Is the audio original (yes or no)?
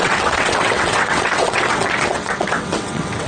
no